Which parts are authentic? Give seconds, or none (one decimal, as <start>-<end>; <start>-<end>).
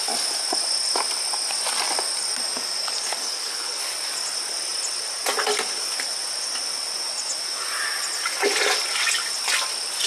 0.0-3.2; 3.8-10.1